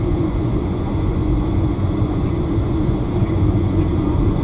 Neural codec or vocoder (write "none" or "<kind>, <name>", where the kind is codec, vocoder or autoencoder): vocoder, Vocos